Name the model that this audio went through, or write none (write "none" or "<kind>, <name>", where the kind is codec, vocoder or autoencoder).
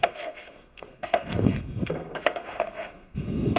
codec, SNAC